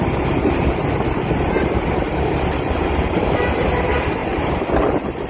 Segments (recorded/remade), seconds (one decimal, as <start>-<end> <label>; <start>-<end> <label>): 0.0-5.3 recorded